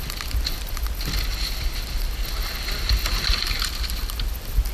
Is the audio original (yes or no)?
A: yes